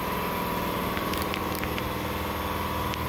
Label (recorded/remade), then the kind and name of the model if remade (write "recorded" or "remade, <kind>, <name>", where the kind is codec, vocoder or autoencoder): recorded